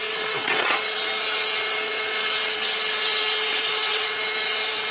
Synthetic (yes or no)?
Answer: yes